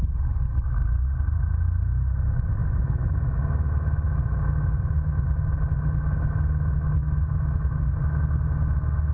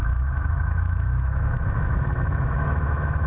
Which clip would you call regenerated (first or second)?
second